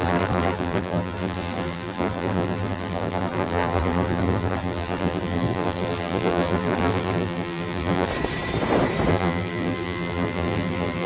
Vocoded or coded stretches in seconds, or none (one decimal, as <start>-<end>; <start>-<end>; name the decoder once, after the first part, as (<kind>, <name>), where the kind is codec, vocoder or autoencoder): 0.0-8.1 (vocoder, BigVGAN v2); 9.1-11.1